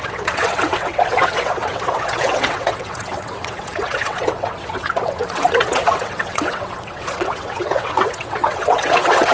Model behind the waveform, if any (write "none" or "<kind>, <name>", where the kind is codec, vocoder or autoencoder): vocoder, WaveNeXt